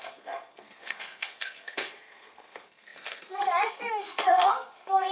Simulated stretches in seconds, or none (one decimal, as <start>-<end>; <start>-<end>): 0.0-5.1